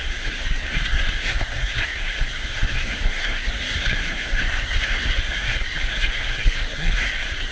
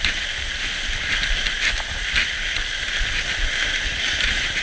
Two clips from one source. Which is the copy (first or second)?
first